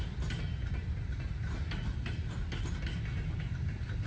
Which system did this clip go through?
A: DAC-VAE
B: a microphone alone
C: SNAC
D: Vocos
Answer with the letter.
B